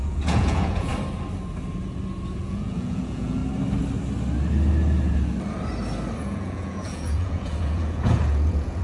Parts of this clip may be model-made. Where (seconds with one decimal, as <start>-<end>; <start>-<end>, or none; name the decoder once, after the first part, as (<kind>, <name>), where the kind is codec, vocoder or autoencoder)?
0.0-0.9 (vocoder, Vocos); 2.4-3.4; 6.2-8.8